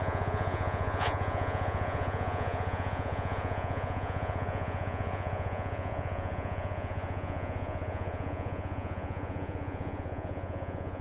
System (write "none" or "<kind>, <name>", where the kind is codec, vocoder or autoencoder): vocoder, Vocos